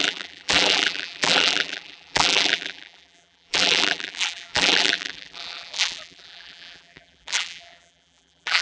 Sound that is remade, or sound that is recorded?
remade